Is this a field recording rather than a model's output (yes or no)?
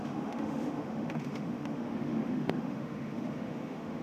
no